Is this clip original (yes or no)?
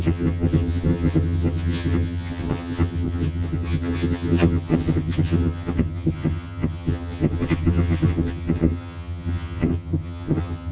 no